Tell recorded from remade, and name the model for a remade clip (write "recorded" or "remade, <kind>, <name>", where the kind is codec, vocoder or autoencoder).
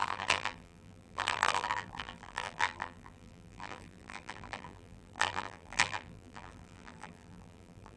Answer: remade, vocoder, BigVGAN v2